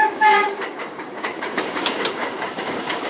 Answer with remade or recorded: remade